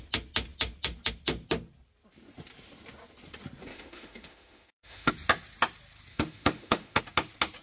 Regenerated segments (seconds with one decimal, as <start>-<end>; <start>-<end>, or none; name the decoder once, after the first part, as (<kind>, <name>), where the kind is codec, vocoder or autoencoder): 3.7-5.1 (autoencoder, DAC-VAE); 6.1-7.0